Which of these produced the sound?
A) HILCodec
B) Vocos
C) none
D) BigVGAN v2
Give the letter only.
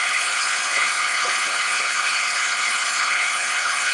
A